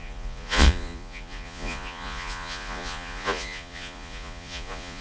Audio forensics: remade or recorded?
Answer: remade